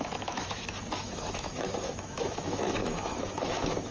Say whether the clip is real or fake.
fake